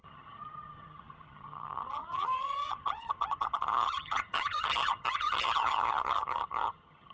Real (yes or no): no